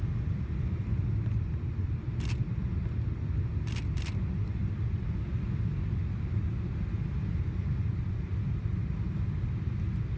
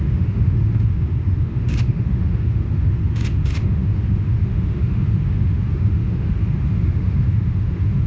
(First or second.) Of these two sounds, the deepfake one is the second